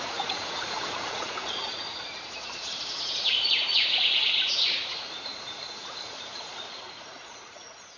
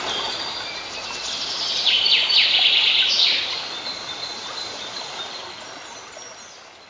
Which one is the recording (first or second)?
second